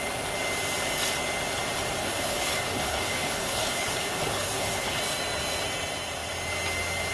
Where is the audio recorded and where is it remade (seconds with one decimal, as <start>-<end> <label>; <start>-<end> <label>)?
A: 0.0-2.0 recorded; 2.0-5.0 remade; 5.0-7.1 recorded